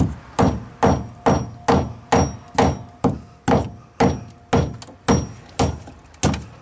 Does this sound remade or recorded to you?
recorded